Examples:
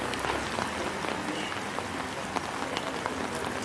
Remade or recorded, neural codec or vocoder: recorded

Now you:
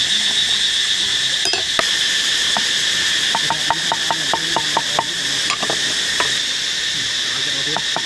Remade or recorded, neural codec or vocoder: recorded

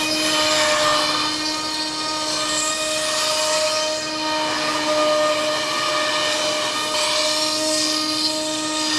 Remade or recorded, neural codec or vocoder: recorded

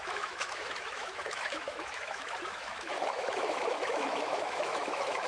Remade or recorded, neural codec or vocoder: remade, autoencoder, DAC-VAE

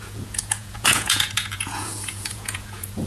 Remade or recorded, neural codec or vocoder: remade, vocoder, Vocos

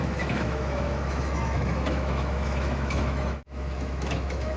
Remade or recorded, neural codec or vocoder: remade, autoencoder, DAC-VAE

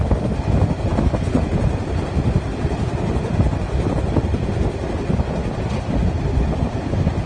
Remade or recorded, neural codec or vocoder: recorded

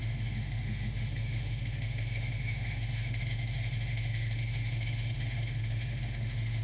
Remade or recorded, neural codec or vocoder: remade, autoencoder, DAC-VAE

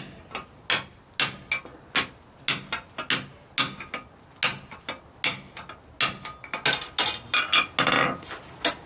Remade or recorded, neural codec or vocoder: recorded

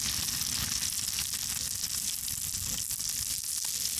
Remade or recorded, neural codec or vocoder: recorded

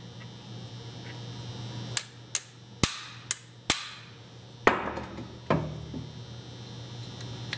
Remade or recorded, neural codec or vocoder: recorded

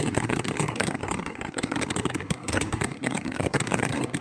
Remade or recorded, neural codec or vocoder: remade, codec, SNAC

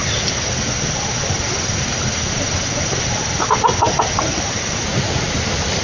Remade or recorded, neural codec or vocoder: recorded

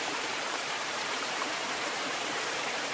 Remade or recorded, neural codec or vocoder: remade, vocoder, BigVGAN v2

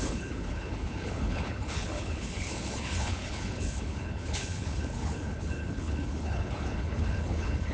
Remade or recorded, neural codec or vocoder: remade, codec, HILCodec